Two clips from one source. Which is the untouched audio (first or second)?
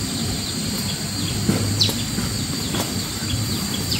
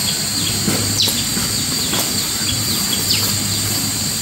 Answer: second